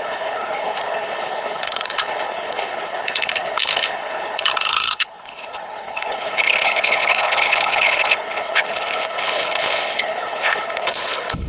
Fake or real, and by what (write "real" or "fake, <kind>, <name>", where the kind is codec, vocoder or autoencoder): fake, codec, HILCodec